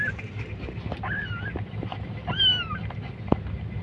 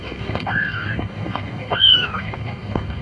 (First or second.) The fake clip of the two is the second